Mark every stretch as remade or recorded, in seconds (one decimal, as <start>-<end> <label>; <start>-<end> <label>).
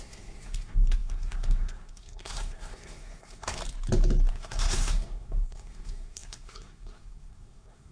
0.0-3.6 remade; 3.6-4.3 recorded; 4.3-7.9 remade